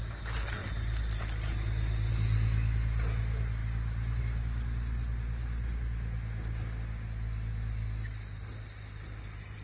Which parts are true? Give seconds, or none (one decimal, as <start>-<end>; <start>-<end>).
0.0-9.6

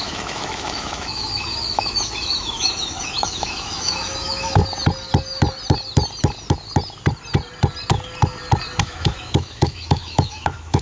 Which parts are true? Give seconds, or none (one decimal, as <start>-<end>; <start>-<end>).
4.6-8.8

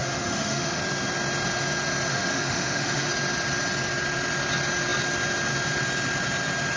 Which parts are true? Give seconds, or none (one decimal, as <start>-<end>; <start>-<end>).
0.8-2.1; 3.1-6.8